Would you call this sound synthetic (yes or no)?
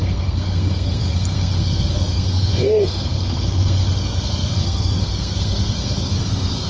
yes